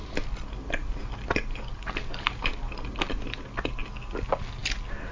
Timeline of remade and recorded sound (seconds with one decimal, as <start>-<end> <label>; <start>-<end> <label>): 0.0-5.1 recorded